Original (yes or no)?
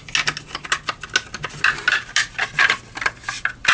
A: yes